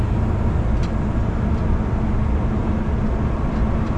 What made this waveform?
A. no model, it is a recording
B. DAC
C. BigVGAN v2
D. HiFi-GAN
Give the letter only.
A